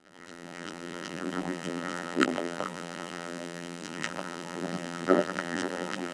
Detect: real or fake fake